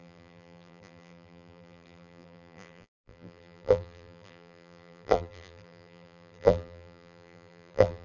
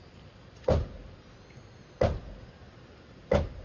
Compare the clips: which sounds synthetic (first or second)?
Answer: first